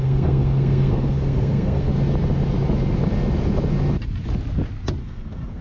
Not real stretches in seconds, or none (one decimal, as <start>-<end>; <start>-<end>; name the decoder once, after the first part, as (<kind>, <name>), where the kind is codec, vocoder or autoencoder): 0.0-1.9 (codec, SNAC); 5.0-5.6